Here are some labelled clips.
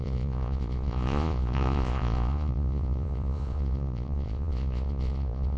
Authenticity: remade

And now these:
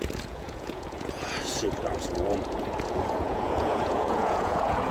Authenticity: remade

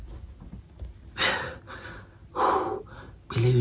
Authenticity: recorded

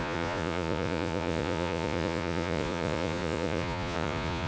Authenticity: remade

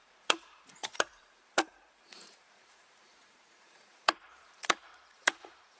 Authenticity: remade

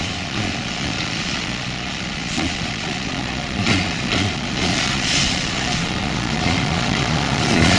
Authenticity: remade